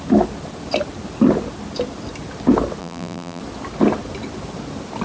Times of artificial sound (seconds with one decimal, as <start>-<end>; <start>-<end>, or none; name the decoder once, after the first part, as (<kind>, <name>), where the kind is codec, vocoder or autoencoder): 2.8-3.4 (vocoder, BigVGAN v2)

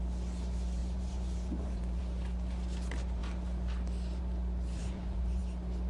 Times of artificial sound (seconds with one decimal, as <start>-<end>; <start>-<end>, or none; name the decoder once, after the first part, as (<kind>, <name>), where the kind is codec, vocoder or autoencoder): 0.8-2.0 (vocoder, BigVGAN v2); 4.8-5.4

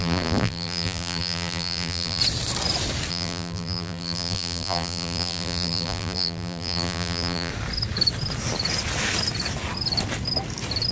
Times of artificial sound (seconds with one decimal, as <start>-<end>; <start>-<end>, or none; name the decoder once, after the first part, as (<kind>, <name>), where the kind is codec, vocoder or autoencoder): 0.0-2.2 (vocoder, BigVGAN v2); 3.1-7.5

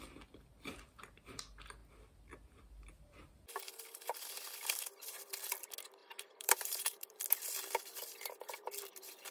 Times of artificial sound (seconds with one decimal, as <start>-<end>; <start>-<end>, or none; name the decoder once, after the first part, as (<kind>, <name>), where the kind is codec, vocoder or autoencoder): 6.0-7.2 (vocoder, BigVGAN v2)

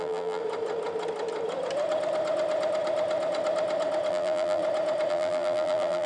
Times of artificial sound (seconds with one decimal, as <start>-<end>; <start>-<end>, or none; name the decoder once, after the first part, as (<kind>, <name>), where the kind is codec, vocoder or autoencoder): 0.0-0.4 (vocoder, BigVGAN v2); 4.1-4.6; 5.1-6.1

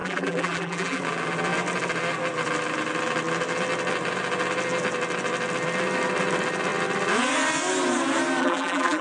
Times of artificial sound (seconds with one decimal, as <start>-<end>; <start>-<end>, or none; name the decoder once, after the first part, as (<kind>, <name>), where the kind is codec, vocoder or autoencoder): 0.0-1.0 (vocoder, BigVGAN v2); 8.4-9.0

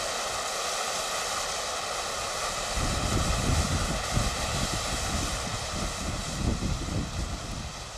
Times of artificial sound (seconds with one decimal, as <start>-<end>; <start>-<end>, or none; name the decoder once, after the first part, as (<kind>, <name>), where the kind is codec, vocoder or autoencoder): none